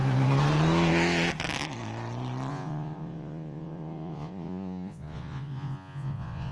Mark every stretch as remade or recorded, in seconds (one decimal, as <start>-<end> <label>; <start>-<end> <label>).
0.0-2.5 recorded; 2.5-6.5 remade